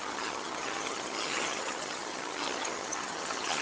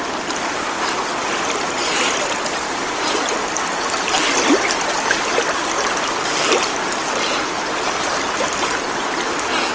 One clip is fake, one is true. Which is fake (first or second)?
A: first